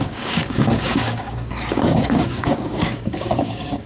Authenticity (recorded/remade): remade